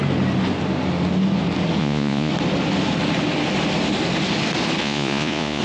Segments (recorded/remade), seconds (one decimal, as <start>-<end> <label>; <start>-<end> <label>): 0.0-1.8 recorded; 1.8-2.3 remade; 2.3-4.8 recorded; 4.8-5.6 remade